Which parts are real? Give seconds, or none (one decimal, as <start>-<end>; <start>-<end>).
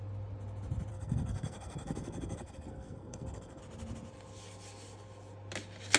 0.0-0.9; 3.6-6.0